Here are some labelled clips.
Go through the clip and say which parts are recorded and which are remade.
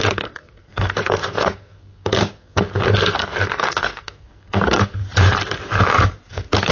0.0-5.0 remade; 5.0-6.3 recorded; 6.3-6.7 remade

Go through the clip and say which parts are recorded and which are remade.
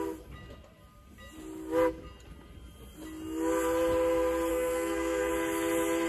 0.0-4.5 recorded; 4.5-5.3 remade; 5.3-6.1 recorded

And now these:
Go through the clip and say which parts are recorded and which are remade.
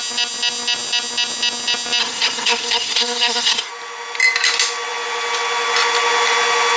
0.0-2.0 recorded; 2.0-3.7 remade; 3.7-6.8 recorded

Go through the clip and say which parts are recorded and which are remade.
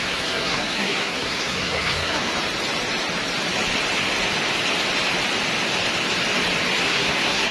0.0-2.3 remade; 2.3-6.8 recorded; 6.8-7.5 remade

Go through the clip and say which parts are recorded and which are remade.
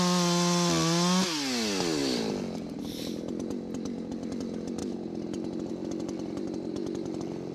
0.0-7.5 recorded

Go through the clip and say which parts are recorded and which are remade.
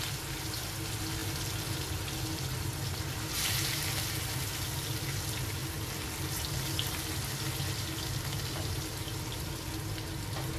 0.0-10.6 recorded